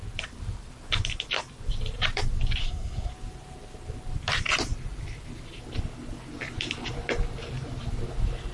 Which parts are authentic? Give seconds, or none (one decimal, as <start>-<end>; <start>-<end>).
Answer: 0.0-2.6; 3.1-8.5